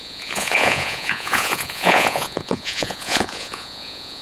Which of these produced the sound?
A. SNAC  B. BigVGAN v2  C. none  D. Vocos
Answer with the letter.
D